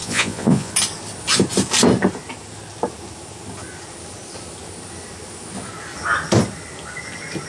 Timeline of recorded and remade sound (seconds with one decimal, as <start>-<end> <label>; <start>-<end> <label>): 0.0-0.7 remade; 0.7-7.5 recorded